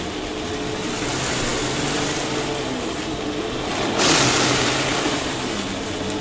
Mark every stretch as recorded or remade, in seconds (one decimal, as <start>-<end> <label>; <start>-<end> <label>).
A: 0.0-4.9 recorded; 4.9-5.4 remade; 5.4-6.2 recorded